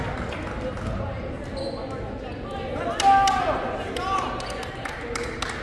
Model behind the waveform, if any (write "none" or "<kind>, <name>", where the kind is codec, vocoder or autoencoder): none